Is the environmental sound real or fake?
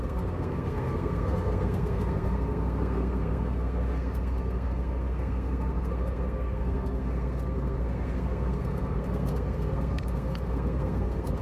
fake